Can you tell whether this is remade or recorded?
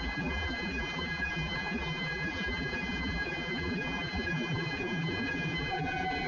remade